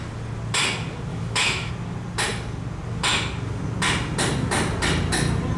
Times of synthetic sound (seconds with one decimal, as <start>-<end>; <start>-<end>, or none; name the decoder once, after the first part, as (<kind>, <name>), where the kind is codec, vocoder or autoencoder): 1.1-1.7 (autoencoder, DAC-VAE)